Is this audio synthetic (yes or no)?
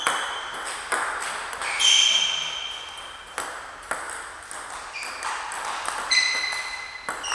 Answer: no